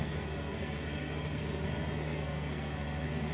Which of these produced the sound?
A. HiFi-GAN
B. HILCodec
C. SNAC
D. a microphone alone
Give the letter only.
C